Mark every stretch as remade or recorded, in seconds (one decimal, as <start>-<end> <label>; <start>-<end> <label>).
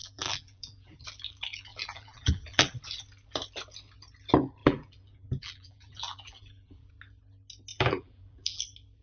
0.0-1.0 remade; 1.0-1.7 recorded; 1.7-2.7 remade; 2.7-4.6 recorded; 4.6-6.9 remade; 6.9-7.7 recorded; 7.7-8.6 remade; 8.6-9.0 recorded